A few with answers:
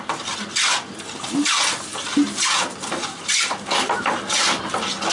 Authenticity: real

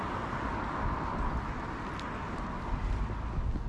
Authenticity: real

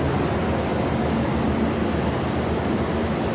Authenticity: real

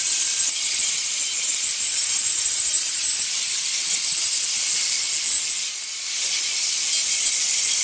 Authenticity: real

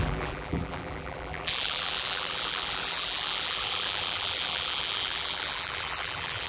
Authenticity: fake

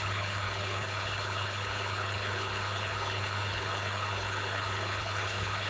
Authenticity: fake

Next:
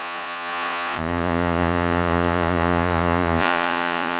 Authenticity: fake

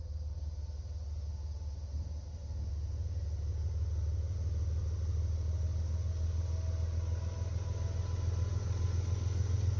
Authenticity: real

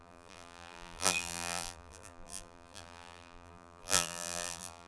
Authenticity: fake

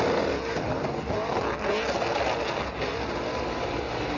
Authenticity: real